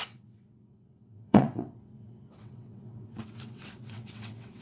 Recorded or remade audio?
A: remade